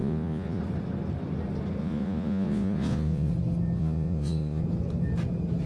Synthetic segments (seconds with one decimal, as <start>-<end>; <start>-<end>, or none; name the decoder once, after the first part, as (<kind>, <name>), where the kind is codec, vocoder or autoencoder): 0.0-0.6 (vocoder, Vocos); 1.8-3.3; 3.8-4.6